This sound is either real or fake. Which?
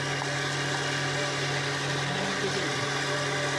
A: real